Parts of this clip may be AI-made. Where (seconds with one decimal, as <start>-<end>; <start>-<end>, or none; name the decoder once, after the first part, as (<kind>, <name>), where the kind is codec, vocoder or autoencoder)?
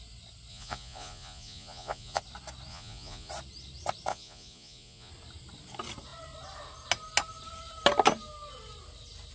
0.5-2.2 (vocoder, Vocos); 2.7-3.3; 4.1-5.1